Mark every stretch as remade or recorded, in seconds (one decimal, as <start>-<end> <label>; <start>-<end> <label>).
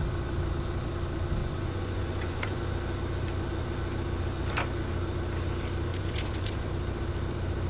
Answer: 0.0-1.4 recorded; 1.4-2.6 remade; 2.6-5.9 recorded; 5.9-6.7 remade; 6.7-7.7 recorded